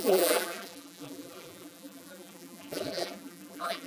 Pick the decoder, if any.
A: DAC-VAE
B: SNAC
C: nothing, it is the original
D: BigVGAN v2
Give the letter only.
D